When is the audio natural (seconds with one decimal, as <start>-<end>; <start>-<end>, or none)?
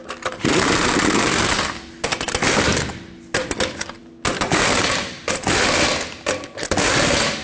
0.0-7.4